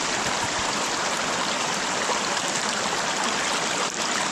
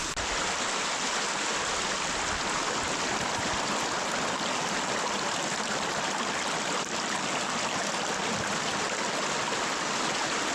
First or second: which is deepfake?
first